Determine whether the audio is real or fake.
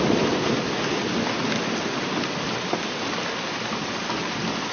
real